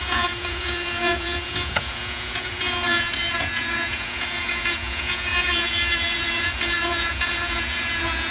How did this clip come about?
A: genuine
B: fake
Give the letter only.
B